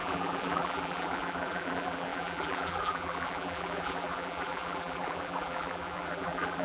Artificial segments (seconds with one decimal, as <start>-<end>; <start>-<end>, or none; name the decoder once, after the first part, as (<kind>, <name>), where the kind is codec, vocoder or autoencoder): 0.0-6.6 (vocoder, BigVGAN v2)

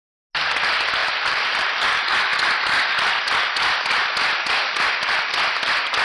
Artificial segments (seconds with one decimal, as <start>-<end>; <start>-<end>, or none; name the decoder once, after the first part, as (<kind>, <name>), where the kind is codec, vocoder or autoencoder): 1.0-1.8 (vocoder, BigVGAN v2)

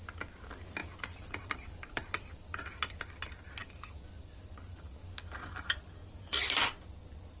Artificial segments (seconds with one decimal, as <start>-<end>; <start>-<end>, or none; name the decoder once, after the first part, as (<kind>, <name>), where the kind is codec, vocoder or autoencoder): 0.8-2.6 (vocoder, BigVGAN v2); 6.0-6.6

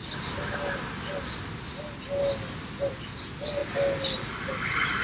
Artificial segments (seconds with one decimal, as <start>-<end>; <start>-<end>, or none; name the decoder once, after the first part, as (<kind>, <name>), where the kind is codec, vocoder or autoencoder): none